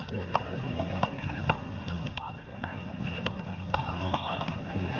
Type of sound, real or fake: fake